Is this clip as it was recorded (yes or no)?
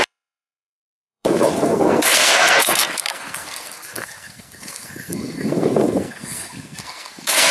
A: no